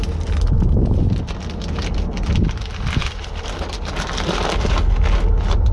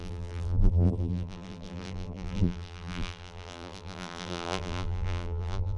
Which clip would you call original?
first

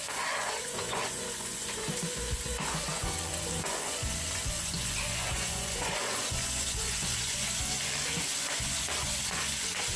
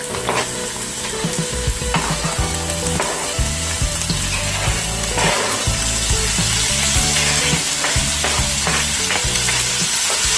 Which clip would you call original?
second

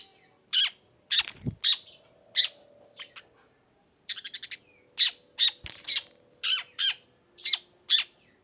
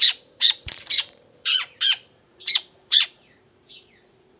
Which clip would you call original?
first